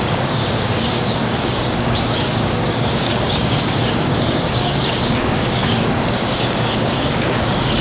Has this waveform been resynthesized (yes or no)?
yes